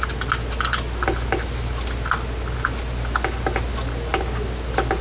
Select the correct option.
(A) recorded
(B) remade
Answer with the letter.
A